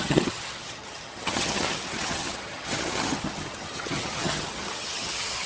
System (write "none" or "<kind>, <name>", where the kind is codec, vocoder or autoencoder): vocoder, HiFi-GAN